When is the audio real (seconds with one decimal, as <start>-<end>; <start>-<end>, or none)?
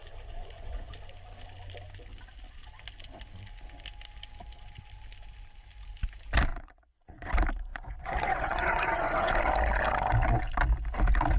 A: 0.9-6.5; 7.3-7.7; 9.3-11.4